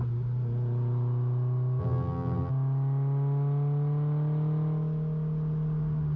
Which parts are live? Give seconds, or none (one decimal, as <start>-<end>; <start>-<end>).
0.0-1.8; 2.5-6.2